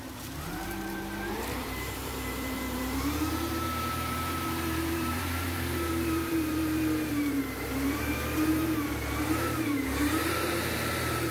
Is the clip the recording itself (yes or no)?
no